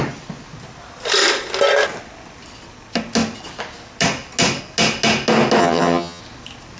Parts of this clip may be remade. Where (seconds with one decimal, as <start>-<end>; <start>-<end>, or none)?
5.6-6.2